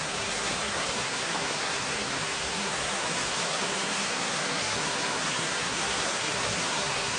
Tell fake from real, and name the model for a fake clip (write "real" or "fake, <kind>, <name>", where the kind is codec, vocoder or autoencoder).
fake, codec, SNAC